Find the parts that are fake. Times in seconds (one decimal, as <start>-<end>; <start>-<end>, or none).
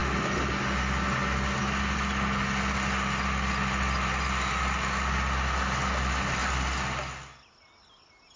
none